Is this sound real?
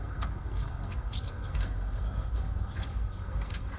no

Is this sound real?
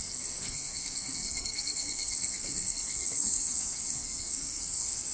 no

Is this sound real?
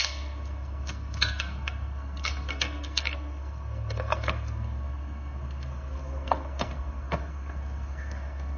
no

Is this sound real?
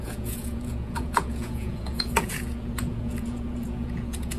no